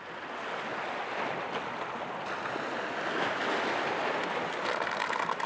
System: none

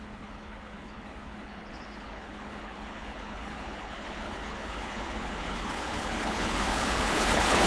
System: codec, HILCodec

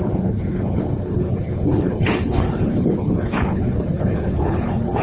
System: codec, HILCodec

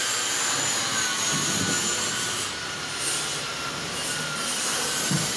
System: none